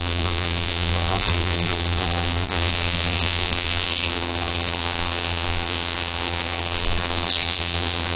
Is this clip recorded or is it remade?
remade